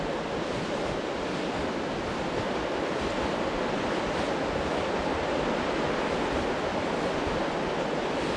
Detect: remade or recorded recorded